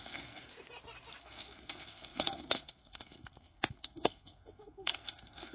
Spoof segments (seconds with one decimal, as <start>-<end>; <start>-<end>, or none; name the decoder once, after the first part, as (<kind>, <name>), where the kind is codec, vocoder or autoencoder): 0.0-0.5 (codec, SNAC); 1.2-5.5